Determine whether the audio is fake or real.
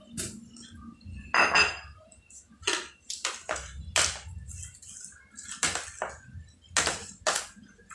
real